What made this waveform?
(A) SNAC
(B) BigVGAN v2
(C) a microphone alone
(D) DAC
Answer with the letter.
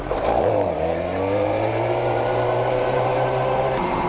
B